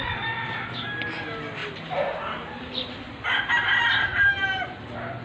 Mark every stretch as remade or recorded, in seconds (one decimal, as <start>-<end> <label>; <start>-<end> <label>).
0.0-1.6 recorded; 1.6-3.3 remade; 3.3-4.1 recorded; 4.1-4.8 remade; 4.8-5.2 recorded